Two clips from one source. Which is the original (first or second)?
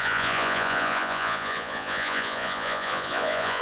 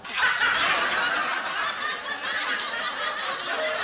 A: second